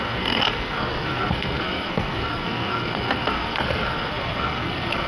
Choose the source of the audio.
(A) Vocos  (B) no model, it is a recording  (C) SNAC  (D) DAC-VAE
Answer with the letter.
C